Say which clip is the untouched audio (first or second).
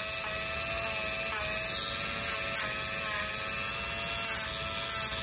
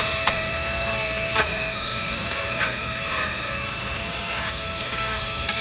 first